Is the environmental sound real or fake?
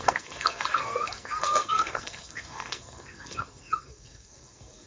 fake